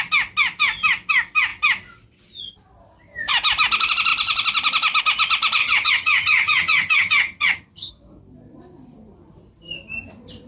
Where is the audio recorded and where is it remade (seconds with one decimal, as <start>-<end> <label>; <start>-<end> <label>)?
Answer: 0.0-5.6 recorded; 5.6-7.9 remade; 7.9-10.5 recorded